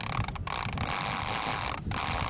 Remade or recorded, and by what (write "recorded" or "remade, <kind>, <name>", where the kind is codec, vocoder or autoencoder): recorded